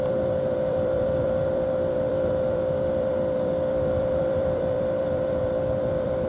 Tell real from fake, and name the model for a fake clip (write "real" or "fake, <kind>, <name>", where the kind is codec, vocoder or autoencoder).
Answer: fake, vocoder, BigVGAN v2